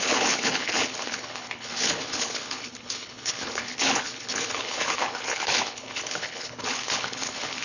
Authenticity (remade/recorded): remade